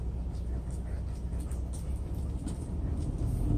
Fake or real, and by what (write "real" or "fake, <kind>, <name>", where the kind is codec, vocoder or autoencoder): real